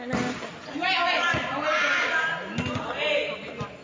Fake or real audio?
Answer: real